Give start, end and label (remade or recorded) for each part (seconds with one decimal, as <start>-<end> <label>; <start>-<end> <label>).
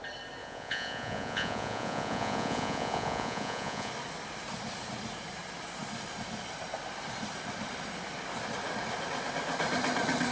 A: 0.0-0.4 recorded; 0.4-3.9 remade; 3.9-10.3 recorded